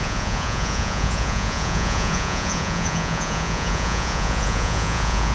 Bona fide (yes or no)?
no